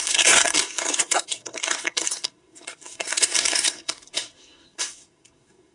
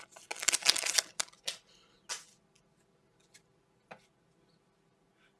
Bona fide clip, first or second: second